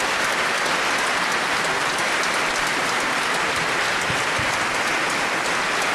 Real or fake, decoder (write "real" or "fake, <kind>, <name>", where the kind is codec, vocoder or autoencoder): real